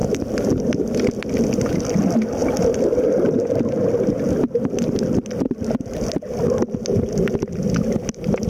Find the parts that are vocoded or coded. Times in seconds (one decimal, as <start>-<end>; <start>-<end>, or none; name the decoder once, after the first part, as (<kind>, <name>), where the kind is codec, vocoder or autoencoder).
none